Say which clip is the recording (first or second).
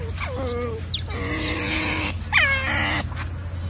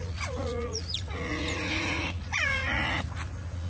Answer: first